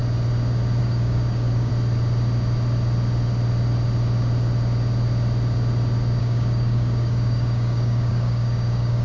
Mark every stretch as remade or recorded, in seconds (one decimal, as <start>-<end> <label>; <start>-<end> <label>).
0.0-0.8 recorded; 0.8-1.7 remade; 1.7-6.2 recorded; 6.2-9.0 remade